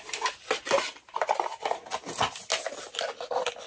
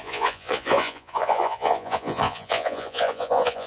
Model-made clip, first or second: second